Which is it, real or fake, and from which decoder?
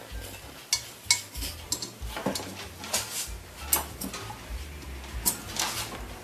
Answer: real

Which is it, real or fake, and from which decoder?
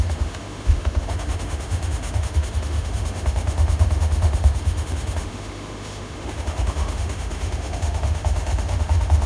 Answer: fake, autoencoder, DAC-VAE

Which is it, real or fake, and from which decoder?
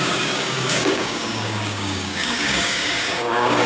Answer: fake, codec, DAC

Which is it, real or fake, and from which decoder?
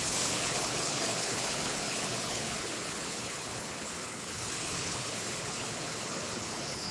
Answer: fake, codec, HILCodec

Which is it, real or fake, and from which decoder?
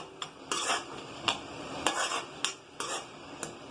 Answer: real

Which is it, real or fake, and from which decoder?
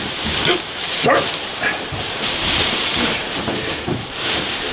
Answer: fake, vocoder, BigVGAN v2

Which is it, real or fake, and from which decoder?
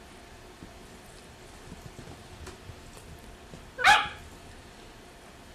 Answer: real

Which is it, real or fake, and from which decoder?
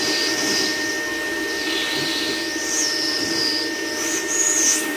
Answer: real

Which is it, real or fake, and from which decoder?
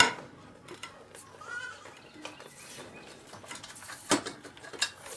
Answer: real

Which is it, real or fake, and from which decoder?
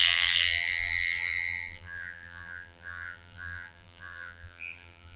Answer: fake, vocoder, BigVGAN v2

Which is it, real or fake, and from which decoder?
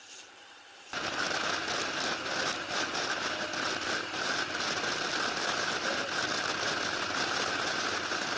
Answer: real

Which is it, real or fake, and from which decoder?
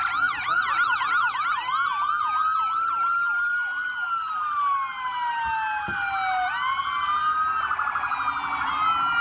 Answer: real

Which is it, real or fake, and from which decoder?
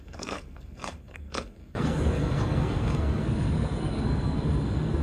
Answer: fake, codec, SNAC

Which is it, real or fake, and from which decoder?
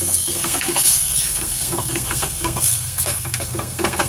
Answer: fake, codec, SNAC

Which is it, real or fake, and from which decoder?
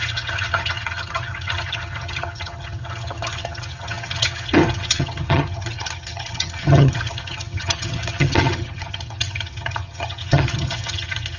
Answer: fake, vocoder, HiFi-GAN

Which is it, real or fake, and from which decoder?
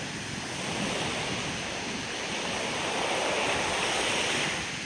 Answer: real